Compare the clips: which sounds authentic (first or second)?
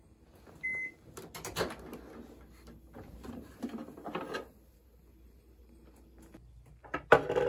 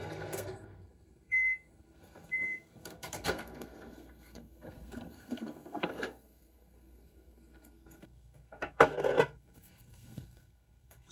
first